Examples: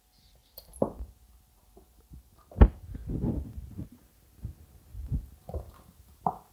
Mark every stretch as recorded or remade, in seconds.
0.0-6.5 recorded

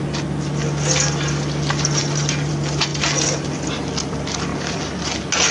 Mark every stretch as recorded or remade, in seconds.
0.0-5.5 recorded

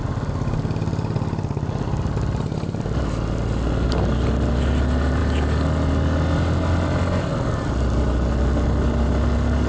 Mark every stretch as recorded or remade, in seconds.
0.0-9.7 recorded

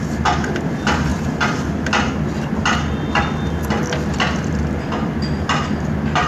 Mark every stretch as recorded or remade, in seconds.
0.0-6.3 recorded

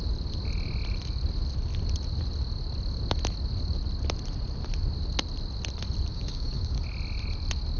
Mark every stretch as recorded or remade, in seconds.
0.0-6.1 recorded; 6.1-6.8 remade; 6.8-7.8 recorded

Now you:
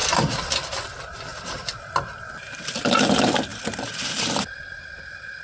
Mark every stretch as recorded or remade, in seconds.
0.0-0.8 remade; 0.8-1.3 recorded; 1.3-1.9 remade; 1.9-5.4 recorded

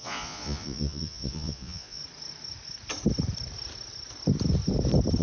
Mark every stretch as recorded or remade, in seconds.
0.0-2.0 remade; 2.0-5.2 recorded

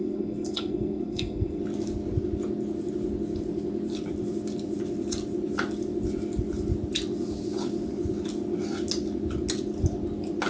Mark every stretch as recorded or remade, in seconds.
0.0-1.6 remade; 1.6-10.5 recorded